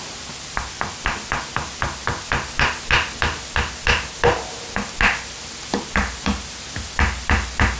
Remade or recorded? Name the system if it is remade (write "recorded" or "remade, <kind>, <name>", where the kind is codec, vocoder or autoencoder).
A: recorded